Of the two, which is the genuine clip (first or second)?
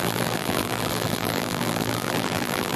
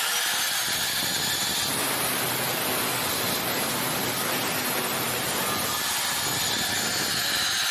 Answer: second